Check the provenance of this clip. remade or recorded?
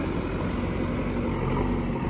recorded